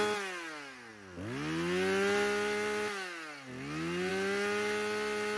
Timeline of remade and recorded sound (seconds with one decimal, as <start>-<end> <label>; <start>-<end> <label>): 0.0-5.4 recorded